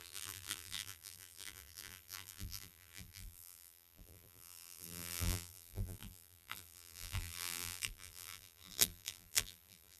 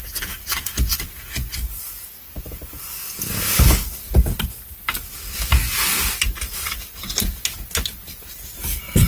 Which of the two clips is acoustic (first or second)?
second